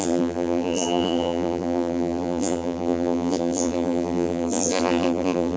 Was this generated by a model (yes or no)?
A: yes